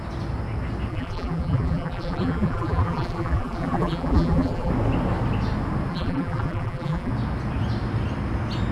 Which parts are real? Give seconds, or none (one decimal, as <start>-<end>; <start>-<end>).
0.0-0.9; 4.7-5.9; 7.1-8.7